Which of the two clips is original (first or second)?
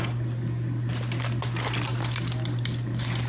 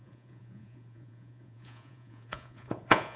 first